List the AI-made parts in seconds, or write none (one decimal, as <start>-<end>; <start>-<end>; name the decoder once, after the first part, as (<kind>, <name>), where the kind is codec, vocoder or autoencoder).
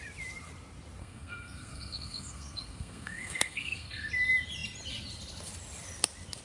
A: 1.0-4.1 (codec, SNAC)